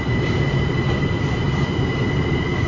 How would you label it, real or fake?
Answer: real